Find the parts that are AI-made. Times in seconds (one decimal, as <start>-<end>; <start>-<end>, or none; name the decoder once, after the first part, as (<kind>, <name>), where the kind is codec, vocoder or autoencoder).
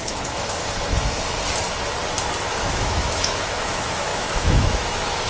0.0-0.6 (autoencoder, DAC-VAE); 2.5-5.3